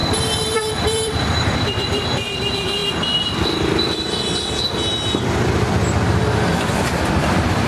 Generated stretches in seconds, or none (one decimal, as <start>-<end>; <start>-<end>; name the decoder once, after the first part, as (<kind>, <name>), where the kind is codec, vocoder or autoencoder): 0.0-7.7 (vocoder, BigVGAN v2)